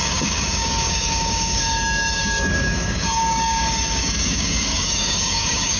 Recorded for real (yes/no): no